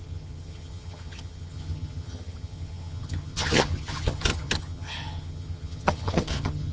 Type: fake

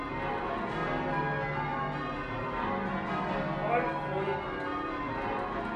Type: real